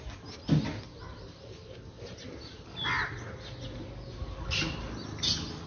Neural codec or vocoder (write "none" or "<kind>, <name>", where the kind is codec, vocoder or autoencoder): none